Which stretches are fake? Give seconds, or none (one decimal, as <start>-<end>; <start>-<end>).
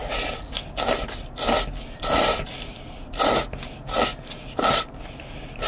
none